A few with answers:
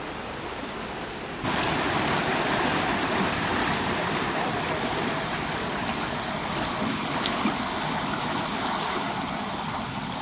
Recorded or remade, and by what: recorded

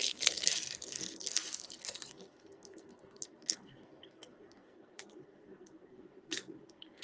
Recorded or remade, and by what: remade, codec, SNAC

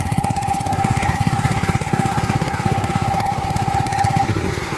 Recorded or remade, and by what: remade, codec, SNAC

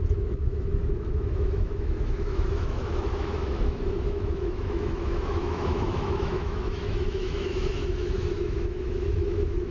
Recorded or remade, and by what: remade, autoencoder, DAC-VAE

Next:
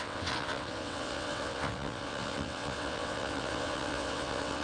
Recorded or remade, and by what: remade, vocoder, WaveNeXt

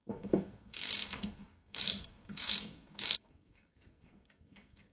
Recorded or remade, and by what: remade, codec, SNAC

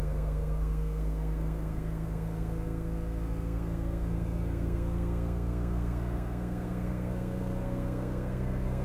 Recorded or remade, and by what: remade, codec, SNAC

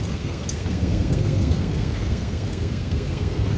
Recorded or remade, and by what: remade, codec, SNAC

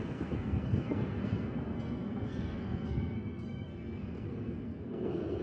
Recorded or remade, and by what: remade, codec, SNAC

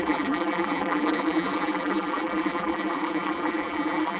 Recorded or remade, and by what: remade, vocoder, BigVGAN v2